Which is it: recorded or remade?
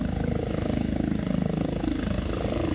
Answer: recorded